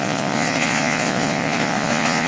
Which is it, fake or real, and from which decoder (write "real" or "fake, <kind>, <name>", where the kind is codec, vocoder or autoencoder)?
fake, vocoder, Vocos